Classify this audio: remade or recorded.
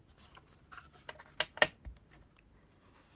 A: recorded